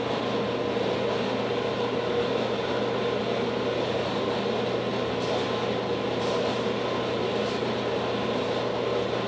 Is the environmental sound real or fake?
real